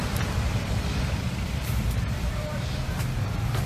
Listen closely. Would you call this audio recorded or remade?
remade